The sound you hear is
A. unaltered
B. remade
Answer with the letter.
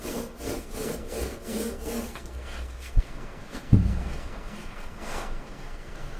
B